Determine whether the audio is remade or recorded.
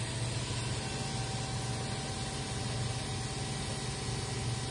recorded